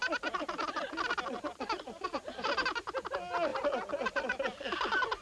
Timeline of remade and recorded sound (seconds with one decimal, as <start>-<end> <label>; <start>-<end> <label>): 0.0-5.2 recorded